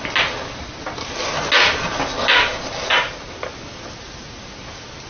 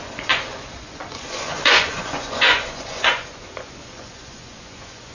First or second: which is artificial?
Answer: second